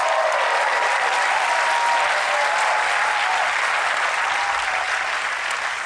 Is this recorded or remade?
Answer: recorded